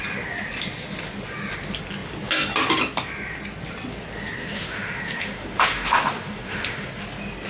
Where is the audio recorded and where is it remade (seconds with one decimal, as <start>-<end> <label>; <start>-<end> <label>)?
0.0-4.4 recorded; 4.4-7.0 remade; 7.0-7.5 recorded